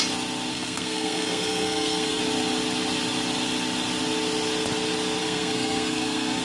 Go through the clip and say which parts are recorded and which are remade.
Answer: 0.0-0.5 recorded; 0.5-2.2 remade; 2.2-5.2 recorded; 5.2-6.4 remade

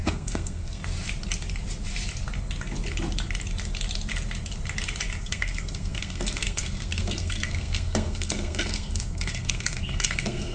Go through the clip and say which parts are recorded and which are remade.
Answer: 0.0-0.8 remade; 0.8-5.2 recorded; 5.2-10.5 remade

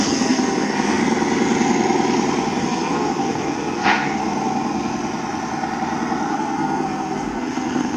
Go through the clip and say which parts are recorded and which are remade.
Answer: 0.0-1.0 remade; 1.0-2.6 recorded; 2.6-4.2 remade; 4.2-6.3 recorded; 6.3-8.0 remade

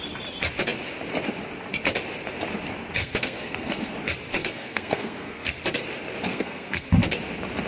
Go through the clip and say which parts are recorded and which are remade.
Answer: 0.0-3.0 recorded; 3.0-3.9 remade; 3.9-4.4 recorded; 4.4-5.5 remade; 5.5-6.3 recorded; 6.3-6.9 remade; 6.9-7.7 recorded

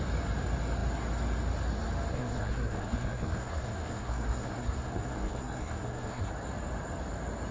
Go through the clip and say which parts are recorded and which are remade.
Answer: 0.0-2.1 recorded; 2.1-6.3 remade; 6.3-7.5 recorded

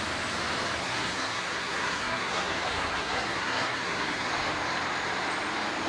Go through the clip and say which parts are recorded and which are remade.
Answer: 0.0-0.8 recorded; 0.8-4.3 remade; 4.3-5.9 recorded